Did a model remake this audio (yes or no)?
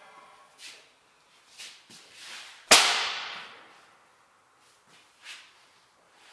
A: no